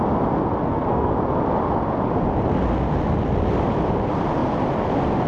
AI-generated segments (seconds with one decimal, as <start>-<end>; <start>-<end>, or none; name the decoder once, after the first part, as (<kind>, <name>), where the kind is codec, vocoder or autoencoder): 0.6-1.1 (codec, SNAC)